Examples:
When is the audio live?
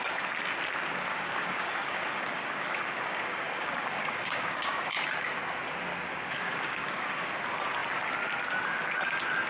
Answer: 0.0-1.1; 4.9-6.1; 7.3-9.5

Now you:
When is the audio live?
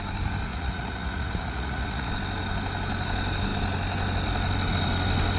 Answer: 0.0-0.5; 2.1-5.4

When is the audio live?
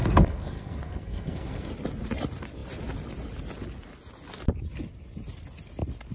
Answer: 1.7-6.1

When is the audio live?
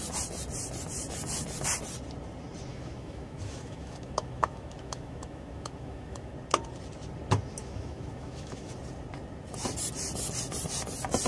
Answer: 0.0-2.7; 6.3-7.6; 8.7-11.3